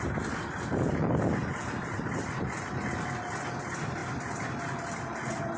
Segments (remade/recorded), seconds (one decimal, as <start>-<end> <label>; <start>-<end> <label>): 0.0-0.4 recorded; 0.4-2.4 remade; 2.4-4.0 recorded; 4.0-4.8 remade; 4.8-5.6 recorded